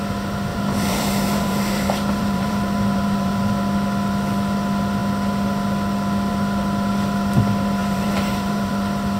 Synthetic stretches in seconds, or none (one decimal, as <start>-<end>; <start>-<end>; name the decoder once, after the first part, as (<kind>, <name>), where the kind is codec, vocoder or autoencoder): 0.5-3.5 (vocoder, BigVGAN v2); 7.8-8.7